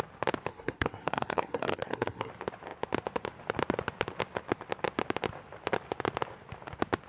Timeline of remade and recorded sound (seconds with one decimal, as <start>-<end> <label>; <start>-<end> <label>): 0.0-0.5 recorded; 0.5-2.3 remade; 2.3-7.1 recorded